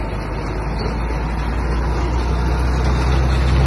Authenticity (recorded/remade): recorded